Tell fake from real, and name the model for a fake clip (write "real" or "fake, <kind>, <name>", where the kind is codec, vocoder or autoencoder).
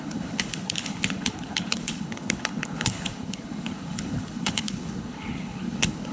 fake, codec, HILCodec